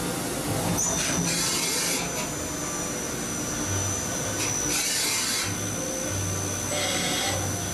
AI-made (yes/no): no